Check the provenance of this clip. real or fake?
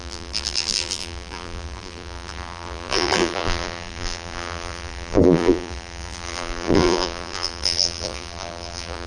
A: fake